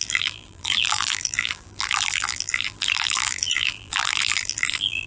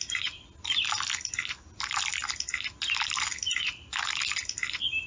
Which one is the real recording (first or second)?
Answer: second